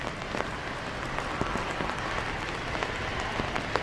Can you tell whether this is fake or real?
real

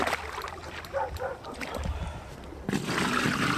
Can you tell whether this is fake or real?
real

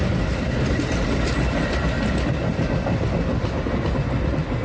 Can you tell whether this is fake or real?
real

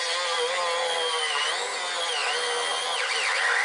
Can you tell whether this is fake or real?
real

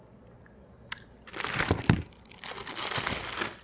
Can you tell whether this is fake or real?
real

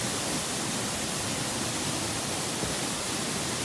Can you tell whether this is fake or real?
real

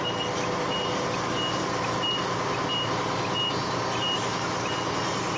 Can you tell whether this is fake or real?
real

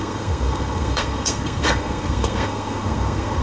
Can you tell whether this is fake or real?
fake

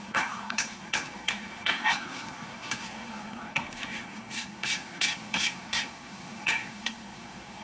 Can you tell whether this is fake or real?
fake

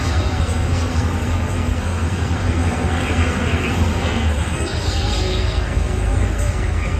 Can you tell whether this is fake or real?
fake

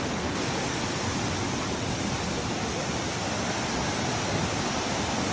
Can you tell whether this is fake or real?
real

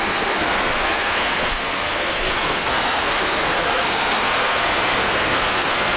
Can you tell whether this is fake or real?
fake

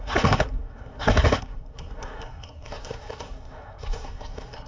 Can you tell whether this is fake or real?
fake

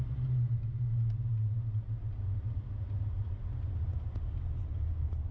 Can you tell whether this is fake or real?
real